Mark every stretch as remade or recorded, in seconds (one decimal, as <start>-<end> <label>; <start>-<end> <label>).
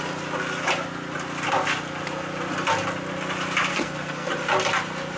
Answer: 0.0-3.7 recorded; 3.7-4.3 remade; 4.3-5.2 recorded